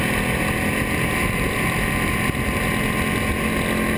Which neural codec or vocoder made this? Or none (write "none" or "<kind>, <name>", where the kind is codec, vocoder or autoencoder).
none